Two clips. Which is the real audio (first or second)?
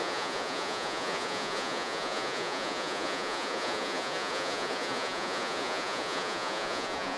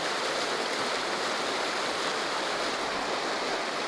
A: second